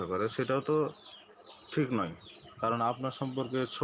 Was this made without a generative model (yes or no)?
yes